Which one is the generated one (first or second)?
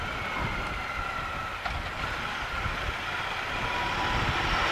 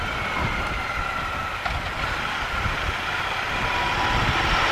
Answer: second